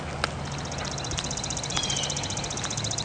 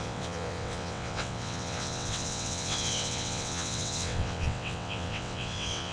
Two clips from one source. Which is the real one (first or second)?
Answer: first